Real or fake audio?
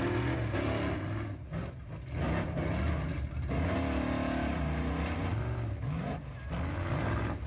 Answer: real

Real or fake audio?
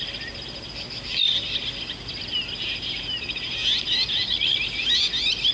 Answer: real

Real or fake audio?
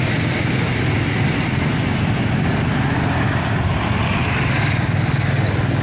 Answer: real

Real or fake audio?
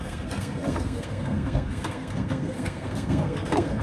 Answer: fake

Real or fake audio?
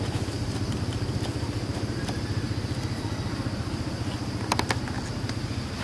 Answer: real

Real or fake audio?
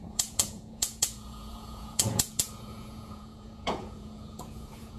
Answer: fake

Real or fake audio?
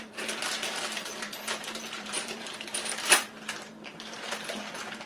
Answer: fake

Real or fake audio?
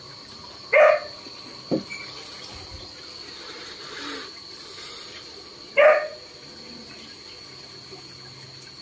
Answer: real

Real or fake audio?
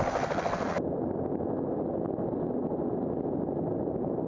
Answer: real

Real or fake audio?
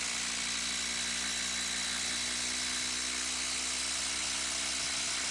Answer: real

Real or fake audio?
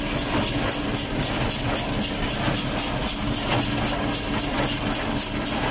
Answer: real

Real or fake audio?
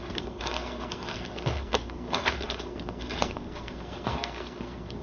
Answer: fake